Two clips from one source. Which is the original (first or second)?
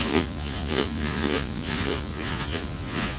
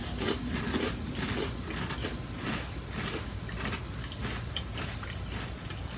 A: second